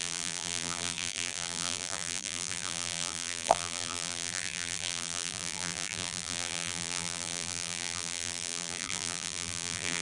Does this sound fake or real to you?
fake